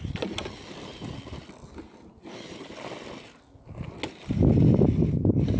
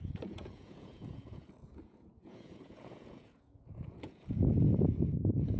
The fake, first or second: second